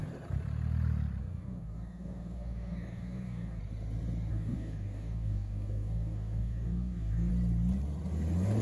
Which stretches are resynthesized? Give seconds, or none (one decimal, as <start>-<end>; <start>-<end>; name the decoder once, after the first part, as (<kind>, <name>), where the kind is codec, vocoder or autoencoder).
1.2-3.6 (codec, DAC); 4.3-7.3